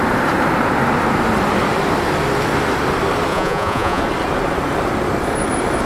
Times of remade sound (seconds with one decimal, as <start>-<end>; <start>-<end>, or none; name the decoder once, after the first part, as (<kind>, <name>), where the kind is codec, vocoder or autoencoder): 3.3-4.0 (vocoder, Vocos)